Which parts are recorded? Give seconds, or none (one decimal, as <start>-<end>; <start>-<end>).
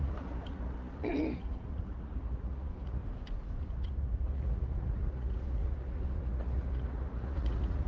3.0-3.6